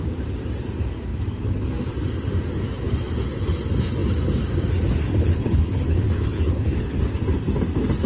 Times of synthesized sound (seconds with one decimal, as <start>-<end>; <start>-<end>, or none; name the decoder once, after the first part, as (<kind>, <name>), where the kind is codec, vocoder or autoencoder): 5.2-7.0 (codec, HILCodec)